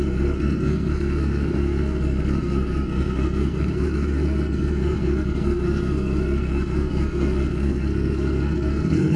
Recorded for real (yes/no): no